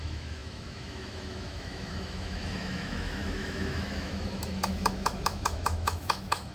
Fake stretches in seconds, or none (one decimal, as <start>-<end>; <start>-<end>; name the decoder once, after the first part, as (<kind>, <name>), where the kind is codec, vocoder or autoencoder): 0.0-6.5 (autoencoder, DAC-VAE)

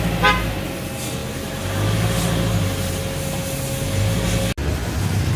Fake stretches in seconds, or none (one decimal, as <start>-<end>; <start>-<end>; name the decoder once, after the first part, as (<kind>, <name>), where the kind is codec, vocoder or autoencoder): none

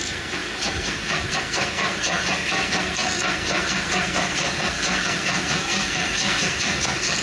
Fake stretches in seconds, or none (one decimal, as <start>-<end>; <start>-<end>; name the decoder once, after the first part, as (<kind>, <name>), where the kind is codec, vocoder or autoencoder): 0.0-7.2 (codec, SNAC)